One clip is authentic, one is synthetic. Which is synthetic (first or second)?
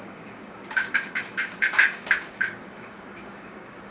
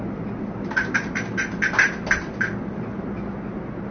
first